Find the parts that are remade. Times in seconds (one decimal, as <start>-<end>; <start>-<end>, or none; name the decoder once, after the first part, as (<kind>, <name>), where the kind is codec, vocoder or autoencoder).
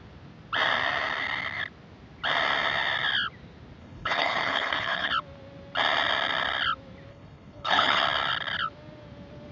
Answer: 3.8-5.1 (codec, HILCodec); 7.1-8.0